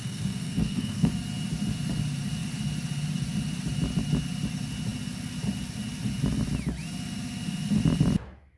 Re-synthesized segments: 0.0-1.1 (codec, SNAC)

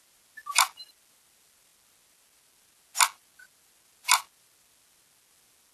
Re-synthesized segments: none

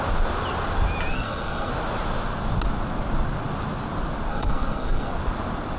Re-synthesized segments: 1.1-1.7 (codec, SNAC); 4.3-5.1